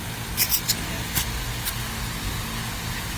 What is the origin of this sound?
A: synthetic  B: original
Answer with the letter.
B